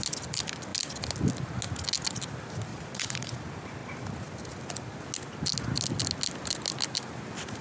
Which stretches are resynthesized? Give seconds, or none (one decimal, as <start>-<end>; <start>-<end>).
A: 2.7-3.4